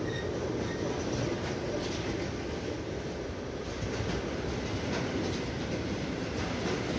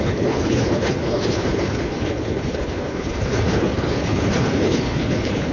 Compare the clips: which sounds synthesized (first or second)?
second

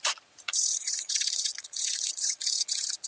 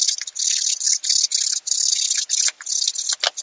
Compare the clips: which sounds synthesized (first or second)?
first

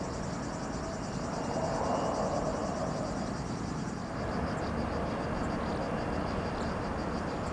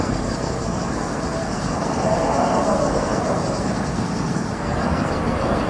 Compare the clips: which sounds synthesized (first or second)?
second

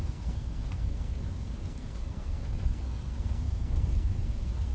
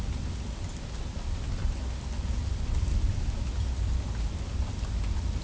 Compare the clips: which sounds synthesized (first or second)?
first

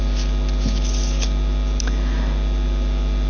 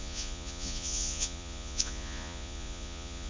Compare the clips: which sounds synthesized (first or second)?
second